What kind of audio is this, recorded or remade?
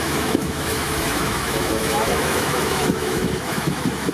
remade